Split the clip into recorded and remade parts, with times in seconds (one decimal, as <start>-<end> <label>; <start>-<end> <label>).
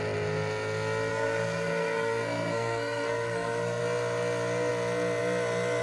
0.0-1.1 recorded; 1.1-3.8 remade; 3.8-5.8 recorded